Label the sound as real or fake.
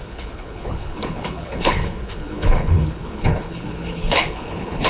fake